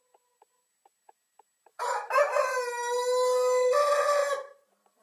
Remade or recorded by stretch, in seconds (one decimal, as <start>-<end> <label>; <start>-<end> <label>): 0.0-1.7 recorded; 1.7-2.2 remade; 2.2-4.2 recorded; 4.2-5.0 remade